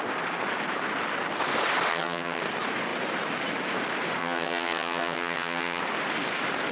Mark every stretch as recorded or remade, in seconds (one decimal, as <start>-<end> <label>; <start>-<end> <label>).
0.0-1.9 recorded; 1.9-2.4 remade; 2.4-4.2 recorded; 4.2-5.8 remade; 5.8-6.7 recorded